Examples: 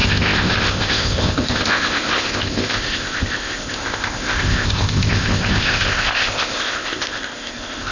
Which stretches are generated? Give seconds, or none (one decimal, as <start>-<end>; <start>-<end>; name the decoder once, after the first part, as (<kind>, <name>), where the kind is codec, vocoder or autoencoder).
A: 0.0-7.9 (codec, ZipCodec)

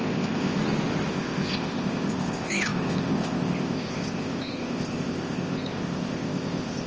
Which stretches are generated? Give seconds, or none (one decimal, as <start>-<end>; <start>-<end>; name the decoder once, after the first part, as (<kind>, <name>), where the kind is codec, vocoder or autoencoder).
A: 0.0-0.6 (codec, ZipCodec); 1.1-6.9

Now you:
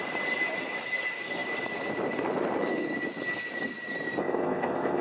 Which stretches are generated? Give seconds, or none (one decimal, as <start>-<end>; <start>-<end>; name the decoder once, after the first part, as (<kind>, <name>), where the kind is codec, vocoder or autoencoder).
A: 4.2-5.0 (codec, ZipCodec)

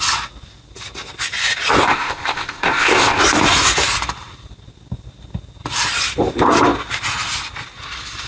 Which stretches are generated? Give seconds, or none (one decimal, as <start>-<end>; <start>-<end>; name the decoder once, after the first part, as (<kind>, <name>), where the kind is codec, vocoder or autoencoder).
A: 1.8-3.2 (codec, ZipCodec)

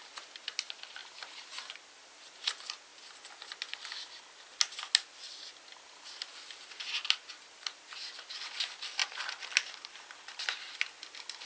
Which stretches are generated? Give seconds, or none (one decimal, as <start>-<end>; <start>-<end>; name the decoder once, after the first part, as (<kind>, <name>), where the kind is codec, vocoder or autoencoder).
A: none